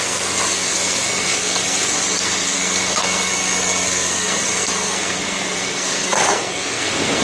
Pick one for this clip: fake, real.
fake